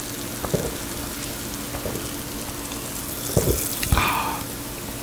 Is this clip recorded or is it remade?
recorded